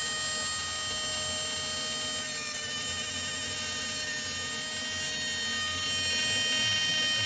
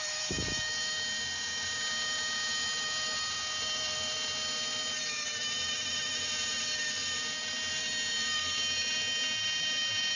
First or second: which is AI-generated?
second